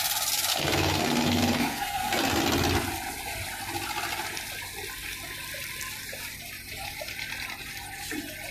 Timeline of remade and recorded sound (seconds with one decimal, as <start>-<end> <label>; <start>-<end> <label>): 0.0-0.5 recorded; 0.5-2.4 remade; 2.4-8.5 recorded